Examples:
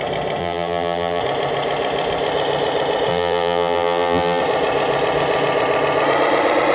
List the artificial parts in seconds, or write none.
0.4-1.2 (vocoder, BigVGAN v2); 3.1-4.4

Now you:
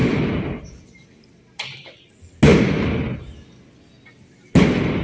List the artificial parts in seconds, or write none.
0.0-2.1 (vocoder, BigVGAN v2)

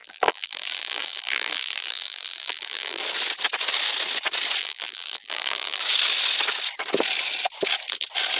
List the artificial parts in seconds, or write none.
0.0-3.0 (vocoder, BigVGAN v2); 4.6-5.8

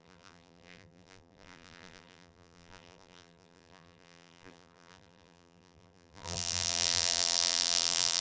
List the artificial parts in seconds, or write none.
0.0-8.2 (vocoder, BigVGAN v2)

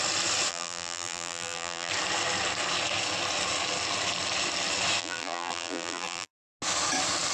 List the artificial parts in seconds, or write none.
0.5-1.9 (vocoder, BigVGAN v2); 5.0-6.3

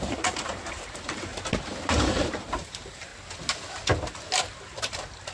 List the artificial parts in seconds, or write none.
0.0-1.3 (vocoder, BigVGAN v2); 1.9-3.1; 4.8-5.3